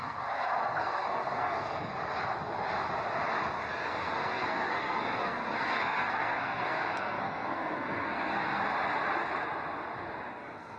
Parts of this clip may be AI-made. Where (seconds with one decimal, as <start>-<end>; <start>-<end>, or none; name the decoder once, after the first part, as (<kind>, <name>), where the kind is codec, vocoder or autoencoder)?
0.0-1.9 (codec, SNAC); 3.7-8.6; 10.4-10.8